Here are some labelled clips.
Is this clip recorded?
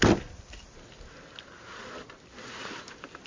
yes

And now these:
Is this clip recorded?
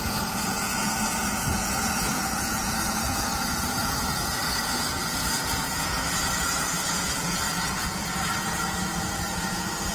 no